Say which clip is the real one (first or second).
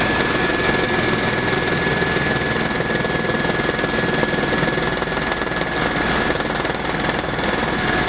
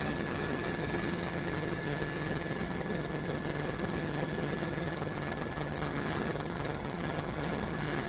first